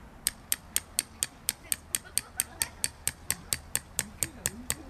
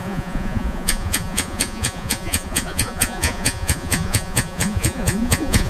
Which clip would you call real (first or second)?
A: first